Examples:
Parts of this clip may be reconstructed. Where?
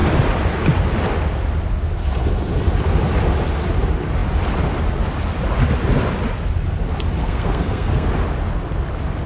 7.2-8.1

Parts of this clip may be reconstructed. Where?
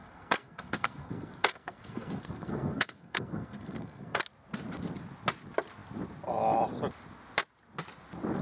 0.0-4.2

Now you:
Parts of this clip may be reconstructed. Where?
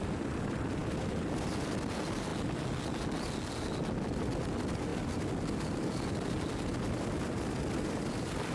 none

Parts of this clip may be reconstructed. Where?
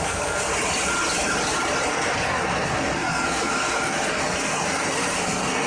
0.0-0.5; 1.9-5.7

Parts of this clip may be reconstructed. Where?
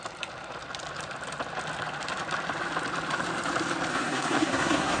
3.9-5.0